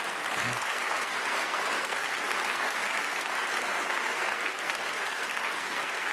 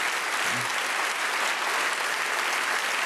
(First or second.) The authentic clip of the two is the second